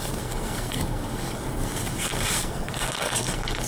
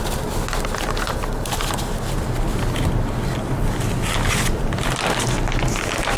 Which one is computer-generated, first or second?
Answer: first